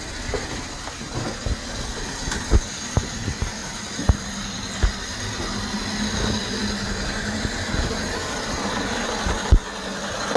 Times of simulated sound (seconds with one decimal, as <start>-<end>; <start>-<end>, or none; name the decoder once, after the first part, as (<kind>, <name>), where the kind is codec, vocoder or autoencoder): 3.6-4.2 (vocoder, BigVGAN v2)